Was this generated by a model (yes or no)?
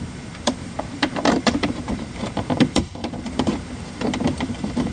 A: yes